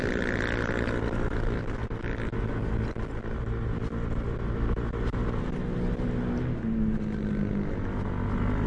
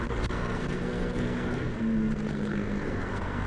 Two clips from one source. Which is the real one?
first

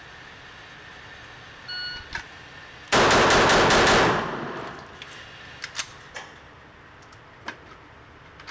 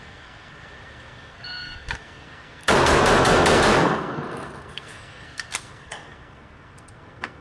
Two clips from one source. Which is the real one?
first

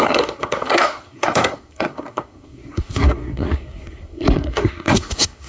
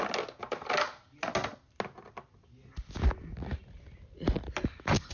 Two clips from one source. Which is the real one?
second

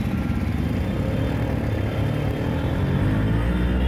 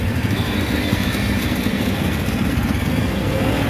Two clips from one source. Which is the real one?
first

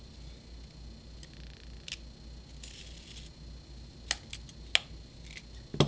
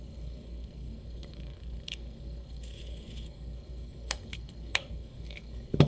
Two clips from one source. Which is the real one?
first